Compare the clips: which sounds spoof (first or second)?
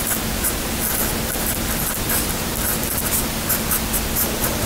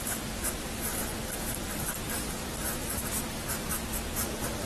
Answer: second